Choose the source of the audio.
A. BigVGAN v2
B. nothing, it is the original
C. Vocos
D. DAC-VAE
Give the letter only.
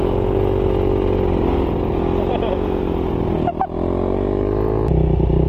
B